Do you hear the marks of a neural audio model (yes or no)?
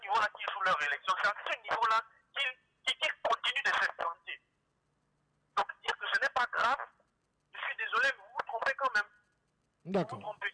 no